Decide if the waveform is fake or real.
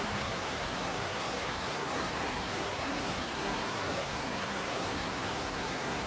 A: fake